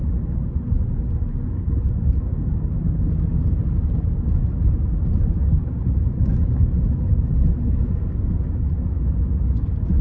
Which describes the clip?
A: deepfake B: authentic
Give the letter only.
B